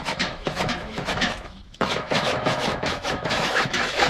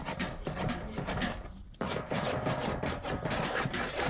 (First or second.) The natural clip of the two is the second